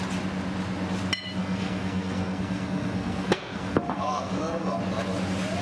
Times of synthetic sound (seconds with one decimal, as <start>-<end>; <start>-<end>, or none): 1.4-4.8